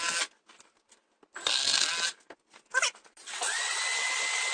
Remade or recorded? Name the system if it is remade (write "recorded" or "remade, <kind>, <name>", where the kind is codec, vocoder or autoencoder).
recorded